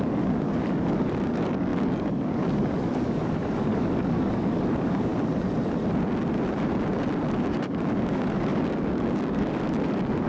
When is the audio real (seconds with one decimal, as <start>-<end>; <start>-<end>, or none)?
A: 5.1-7.3